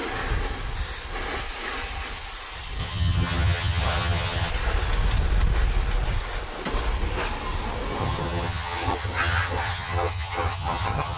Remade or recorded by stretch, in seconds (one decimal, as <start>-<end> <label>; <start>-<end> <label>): 0.0-2.8 recorded; 2.8-4.5 remade; 4.5-8.0 recorded; 8.0-11.2 remade